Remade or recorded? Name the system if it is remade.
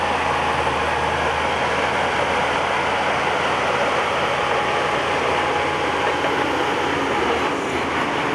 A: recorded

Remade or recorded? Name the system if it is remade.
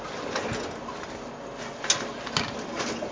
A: recorded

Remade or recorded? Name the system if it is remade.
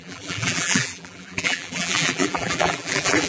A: remade, vocoder, BigVGAN v2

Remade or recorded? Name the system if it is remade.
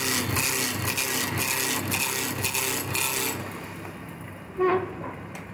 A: recorded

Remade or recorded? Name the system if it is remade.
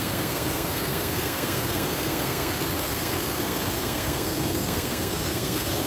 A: remade, codec, SNAC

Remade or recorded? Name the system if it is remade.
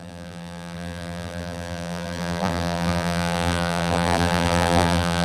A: remade, vocoder, BigVGAN v2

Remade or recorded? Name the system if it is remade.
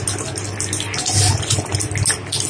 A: recorded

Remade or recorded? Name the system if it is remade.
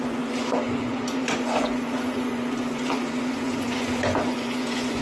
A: remade, vocoder, Vocos